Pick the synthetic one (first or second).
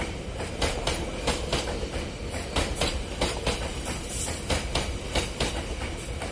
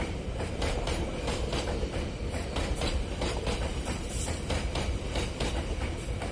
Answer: second